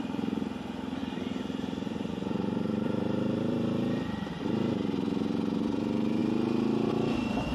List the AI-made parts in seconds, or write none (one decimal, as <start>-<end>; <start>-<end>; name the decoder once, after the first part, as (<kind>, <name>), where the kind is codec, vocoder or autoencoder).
0.0-6.2 (vocoder, BigVGAN v2); 6.9-7.5